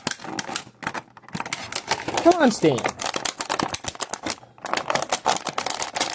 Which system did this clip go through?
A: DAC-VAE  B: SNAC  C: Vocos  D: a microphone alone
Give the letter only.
D